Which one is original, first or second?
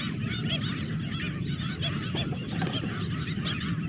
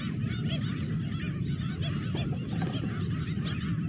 second